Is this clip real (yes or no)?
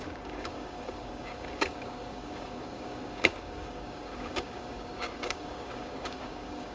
no